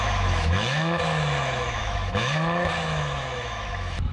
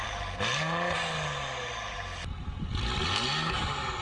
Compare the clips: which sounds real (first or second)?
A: second